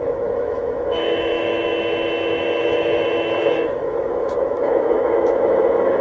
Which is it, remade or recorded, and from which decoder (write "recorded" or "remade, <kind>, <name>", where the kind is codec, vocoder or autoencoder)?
remade, autoencoder, DAC-VAE